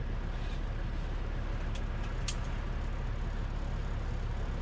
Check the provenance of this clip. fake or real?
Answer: real